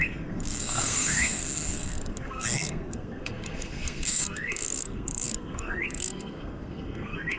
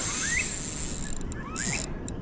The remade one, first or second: first